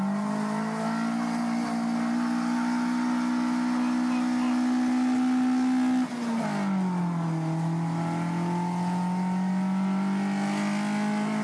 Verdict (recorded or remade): recorded